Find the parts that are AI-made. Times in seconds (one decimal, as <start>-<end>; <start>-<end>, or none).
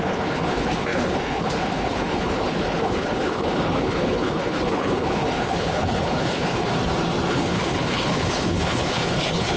0.0-6.7; 7.3-9.6